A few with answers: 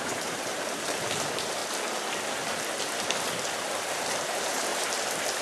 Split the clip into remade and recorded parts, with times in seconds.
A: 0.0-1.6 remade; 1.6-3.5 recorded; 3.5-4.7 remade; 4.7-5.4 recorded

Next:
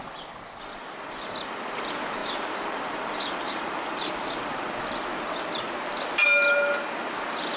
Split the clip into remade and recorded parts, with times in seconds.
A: 0.0-2.2 recorded; 2.2-4.1 remade; 4.1-7.6 recorded

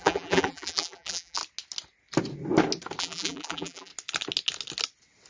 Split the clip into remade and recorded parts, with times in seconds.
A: 0.0-1.4 remade; 1.4-3.0 recorded; 3.0-3.9 remade; 3.9-5.3 recorded

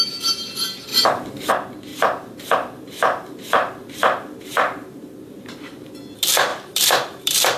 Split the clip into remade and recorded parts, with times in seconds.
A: 0.0-1.9 recorded; 1.9-5.9 remade; 5.9-6.5 recorded; 6.5-7.6 remade

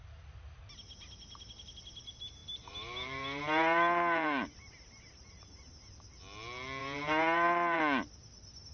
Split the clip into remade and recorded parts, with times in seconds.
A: 0.0-2.4 recorded; 2.4-5.7 remade; 5.7-6.8 recorded; 6.8-7.8 remade; 7.8-8.7 recorded

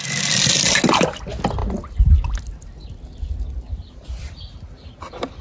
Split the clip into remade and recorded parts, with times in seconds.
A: 0.0-5.4 recorded